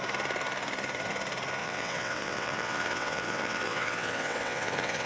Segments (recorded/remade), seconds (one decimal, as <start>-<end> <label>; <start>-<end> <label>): 0.0-1.6 recorded; 1.6-5.1 remade